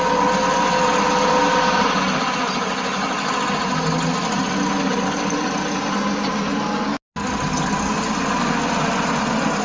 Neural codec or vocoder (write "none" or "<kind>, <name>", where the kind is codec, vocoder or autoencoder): none